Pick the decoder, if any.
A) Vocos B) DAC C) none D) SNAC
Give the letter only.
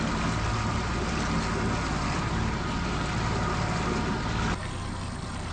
C